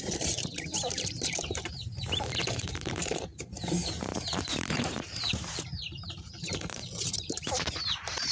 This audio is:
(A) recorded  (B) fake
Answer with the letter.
B